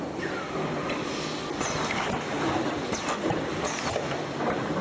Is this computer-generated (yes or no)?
no